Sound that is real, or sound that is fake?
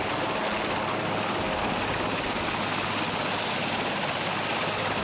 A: real